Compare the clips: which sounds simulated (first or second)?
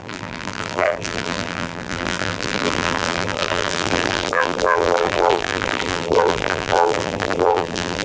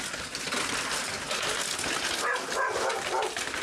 first